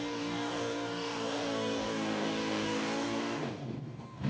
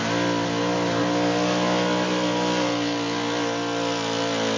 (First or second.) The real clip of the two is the second